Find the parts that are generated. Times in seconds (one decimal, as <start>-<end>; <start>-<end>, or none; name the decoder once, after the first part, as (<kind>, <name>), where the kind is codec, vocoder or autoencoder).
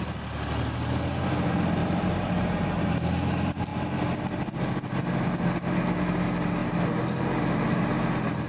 1.8-2.8 (vocoder, BigVGAN v2)